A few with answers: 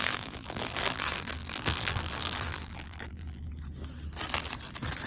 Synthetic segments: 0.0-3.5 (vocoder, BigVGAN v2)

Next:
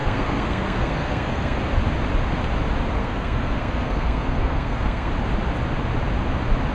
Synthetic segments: 0.0-1.6 (codec, SNAC); 3.0-5.1

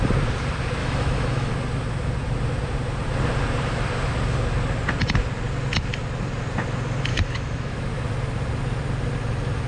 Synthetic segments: 0.8-1.5 (autoencoder, DAC-VAE); 7.1-7.9

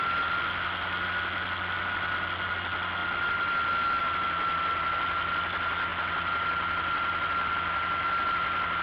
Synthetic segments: none

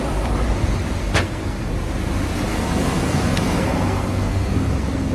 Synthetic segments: 1.0-1.7 (codec, SNAC); 2.5-5.1

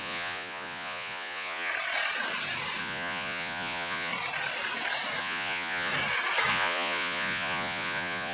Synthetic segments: 0.0-1.7 (vocoder, Vocos); 2.8-4.1; 5.2-5.9; 6.5-8.3